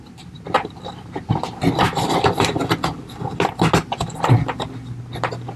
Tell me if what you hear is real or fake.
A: real